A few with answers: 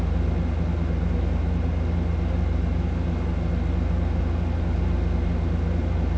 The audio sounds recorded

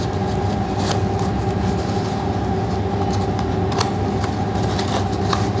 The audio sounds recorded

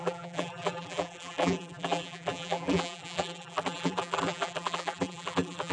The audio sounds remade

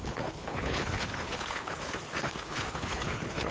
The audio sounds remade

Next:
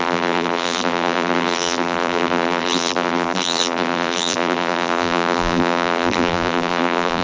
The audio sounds remade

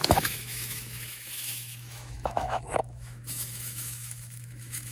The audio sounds remade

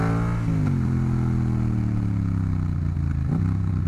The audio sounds recorded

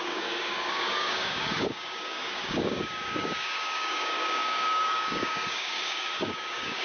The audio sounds remade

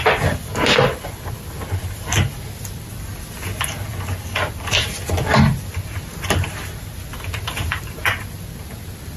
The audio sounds remade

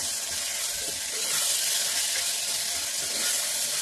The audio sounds recorded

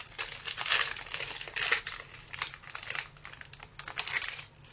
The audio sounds recorded